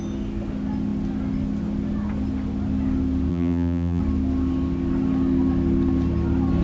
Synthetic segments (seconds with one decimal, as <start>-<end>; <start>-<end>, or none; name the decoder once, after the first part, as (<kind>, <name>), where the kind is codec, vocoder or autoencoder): 3.3-4.0 (vocoder, BigVGAN v2)